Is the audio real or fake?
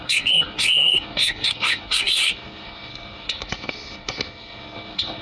fake